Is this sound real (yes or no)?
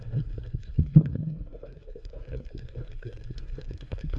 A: no